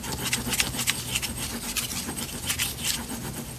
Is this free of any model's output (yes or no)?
yes